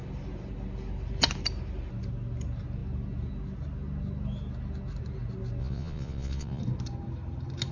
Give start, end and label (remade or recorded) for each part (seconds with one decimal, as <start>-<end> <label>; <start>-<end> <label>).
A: 0.0-5.6 recorded; 5.6-6.6 remade; 6.6-7.7 recorded